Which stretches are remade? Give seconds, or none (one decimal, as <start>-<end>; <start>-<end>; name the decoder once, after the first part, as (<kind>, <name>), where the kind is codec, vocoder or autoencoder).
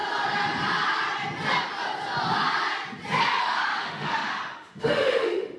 3.4-5.6 (autoencoder, DAC-VAE)